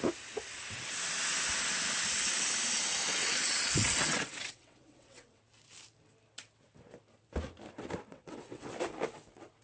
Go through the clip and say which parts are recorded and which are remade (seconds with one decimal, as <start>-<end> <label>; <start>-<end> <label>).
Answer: 0.0-3.1 recorded; 3.1-5.4 remade; 5.4-8.1 recorded; 8.1-8.7 remade; 8.7-9.6 recorded